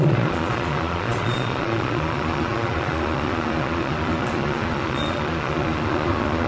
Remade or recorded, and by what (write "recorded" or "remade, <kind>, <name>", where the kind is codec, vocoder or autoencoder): remade, vocoder, Vocos